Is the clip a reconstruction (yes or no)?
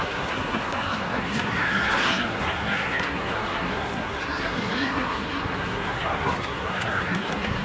yes